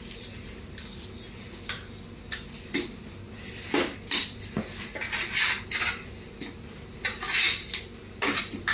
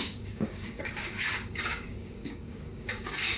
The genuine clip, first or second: first